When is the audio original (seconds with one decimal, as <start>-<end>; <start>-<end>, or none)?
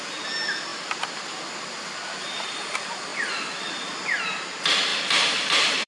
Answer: 0.0-4.9